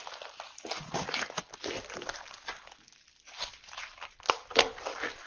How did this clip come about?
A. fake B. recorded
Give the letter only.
B